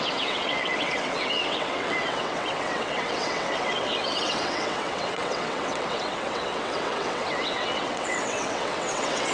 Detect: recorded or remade remade